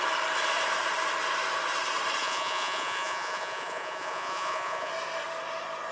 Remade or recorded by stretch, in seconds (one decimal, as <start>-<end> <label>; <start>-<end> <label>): 0.0-2.2 recorded; 2.2-4.9 remade; 4.9-5.9 recorded